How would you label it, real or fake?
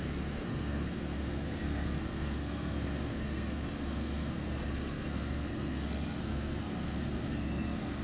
fake